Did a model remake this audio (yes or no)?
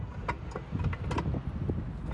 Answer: no